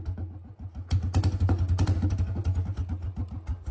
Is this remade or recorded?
recorded